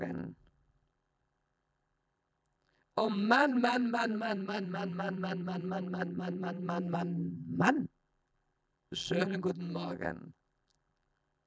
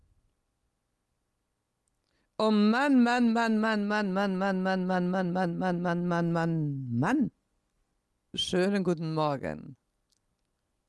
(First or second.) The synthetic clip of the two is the first